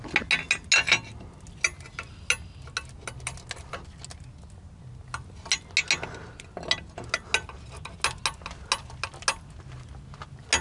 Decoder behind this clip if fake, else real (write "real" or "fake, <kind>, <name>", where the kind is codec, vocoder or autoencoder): real